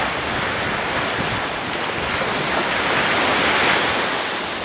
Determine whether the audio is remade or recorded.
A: recorded